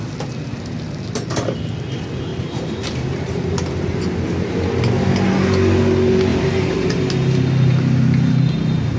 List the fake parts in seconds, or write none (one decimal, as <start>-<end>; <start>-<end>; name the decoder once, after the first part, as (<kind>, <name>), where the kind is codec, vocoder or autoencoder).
2.3-4.0 (vocoder, BigVGAN v2); 6.3-7.0